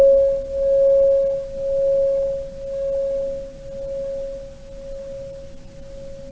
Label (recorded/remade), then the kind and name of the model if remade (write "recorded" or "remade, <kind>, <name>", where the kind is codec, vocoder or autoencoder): recorded